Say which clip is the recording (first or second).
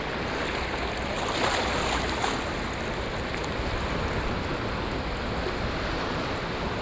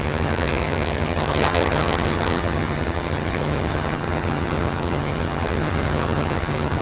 first